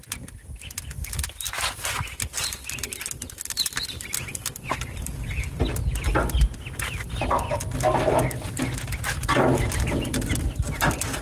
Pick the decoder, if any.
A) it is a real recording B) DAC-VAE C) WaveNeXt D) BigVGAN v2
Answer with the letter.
A